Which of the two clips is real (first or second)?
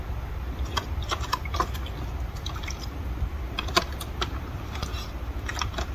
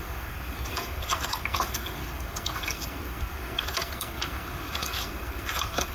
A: first